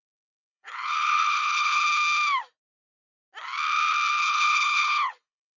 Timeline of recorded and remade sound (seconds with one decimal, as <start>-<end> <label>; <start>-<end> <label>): 0.0-1.8 remade; 1.8-4.2 recorded; 4.2-5.6 remade